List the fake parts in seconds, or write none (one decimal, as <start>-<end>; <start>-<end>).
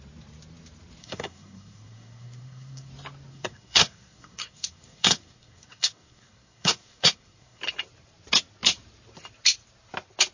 1.0-2.9; 3.3-7.6